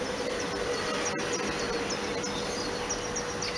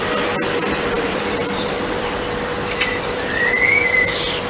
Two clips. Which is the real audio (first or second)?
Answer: first